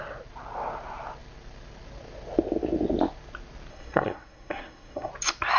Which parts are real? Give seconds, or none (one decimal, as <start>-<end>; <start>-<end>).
0.0-3.7; 5.1-5.6